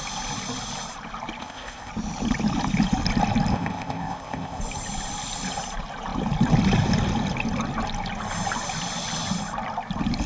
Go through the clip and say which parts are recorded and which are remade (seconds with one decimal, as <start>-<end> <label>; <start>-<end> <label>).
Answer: 0.0-1.4 recorded; 1.4-1.9 remade; 1.9-3.5 recorded; 3.5-4.6 remade; 4.6-10.3 recorded